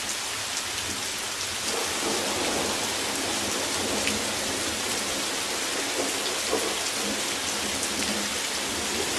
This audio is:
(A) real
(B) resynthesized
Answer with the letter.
A